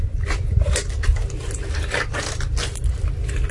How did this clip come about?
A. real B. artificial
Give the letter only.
A